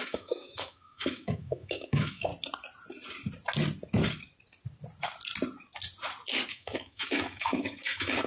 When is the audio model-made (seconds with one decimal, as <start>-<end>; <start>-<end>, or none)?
0.0-2.3; 6.5-8.3

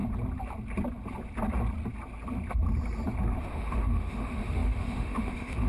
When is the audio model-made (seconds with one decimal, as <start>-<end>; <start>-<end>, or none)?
3.4-5.7